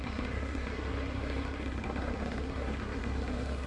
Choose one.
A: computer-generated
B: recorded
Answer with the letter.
A